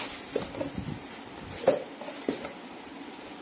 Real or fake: real